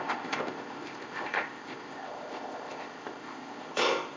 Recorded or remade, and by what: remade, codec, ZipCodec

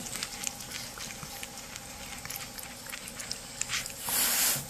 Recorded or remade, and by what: recorded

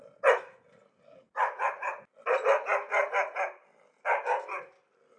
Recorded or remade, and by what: recorded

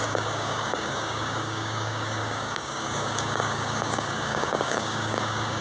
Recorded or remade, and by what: remade, codec, DAC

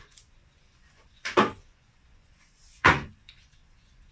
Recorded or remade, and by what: remade, vocoder, Vocos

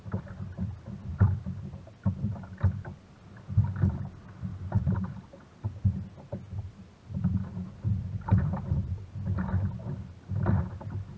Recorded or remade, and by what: recorded